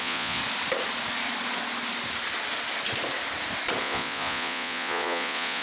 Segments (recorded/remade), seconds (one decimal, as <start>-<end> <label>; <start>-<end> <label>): 0.0-0.4 remade; 0.4-3.8 recorded; 3.8-5.6 remade